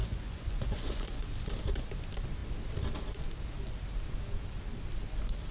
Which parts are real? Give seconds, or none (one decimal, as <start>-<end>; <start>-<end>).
1.3-5.5